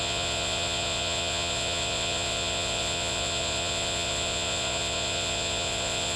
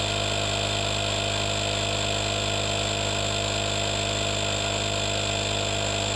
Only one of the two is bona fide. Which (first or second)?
second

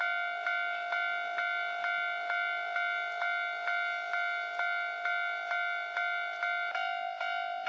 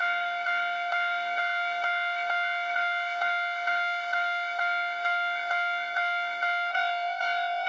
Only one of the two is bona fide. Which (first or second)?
first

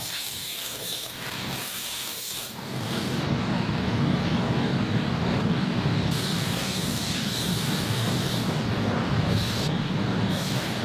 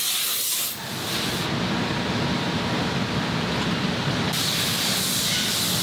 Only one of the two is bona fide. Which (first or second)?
second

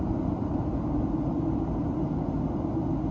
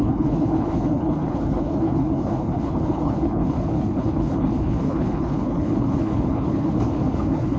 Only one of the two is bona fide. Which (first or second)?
first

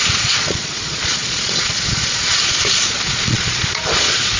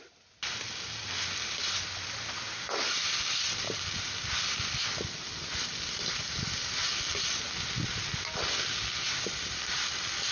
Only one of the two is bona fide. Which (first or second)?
second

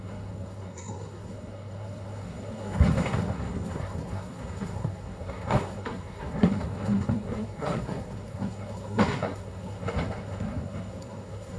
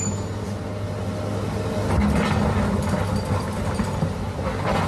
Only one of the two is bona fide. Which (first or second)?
second